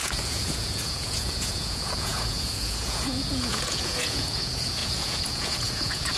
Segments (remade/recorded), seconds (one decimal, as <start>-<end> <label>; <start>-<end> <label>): 0.0-6.2 remade